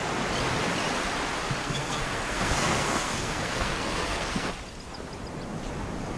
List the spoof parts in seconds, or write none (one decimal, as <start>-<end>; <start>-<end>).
1.6-4.5